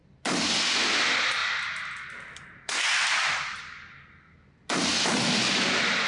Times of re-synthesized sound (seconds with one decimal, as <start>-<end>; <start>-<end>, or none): none